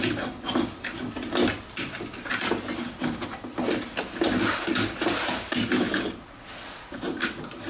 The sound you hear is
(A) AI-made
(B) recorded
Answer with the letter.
B